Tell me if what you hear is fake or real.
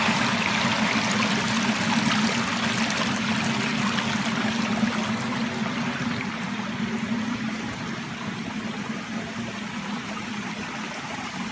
real